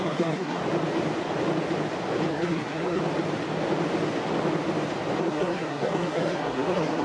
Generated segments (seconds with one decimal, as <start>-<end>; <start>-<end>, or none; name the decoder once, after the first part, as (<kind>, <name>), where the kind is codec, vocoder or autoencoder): 0.0-0.6 (codec, SNAC); 2.3-3.0; 5.2-7.0